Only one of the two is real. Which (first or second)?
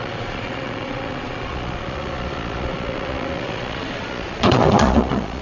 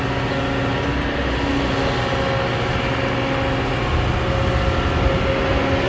second